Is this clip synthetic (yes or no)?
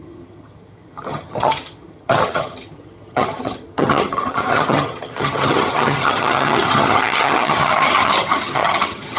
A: yes